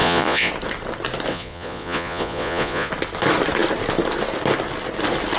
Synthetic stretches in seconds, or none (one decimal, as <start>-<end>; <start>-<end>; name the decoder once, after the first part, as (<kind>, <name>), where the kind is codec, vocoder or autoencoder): 0.0-0.5 (vocoder, Vocos); 1.3-2.9